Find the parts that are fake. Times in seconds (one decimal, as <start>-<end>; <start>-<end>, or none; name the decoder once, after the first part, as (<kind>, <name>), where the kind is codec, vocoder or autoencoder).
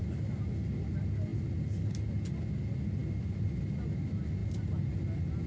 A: none